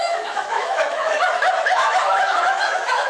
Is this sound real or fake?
fake